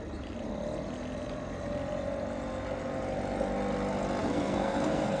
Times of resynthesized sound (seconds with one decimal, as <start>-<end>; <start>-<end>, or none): 4.2-5.2